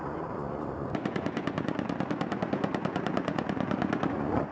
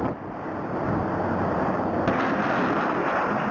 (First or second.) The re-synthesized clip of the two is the first